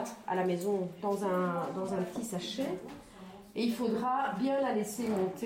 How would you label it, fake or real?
real